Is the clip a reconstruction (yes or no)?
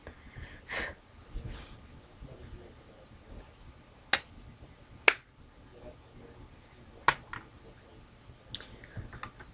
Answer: no